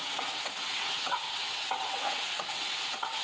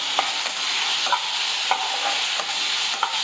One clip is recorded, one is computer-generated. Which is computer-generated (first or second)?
first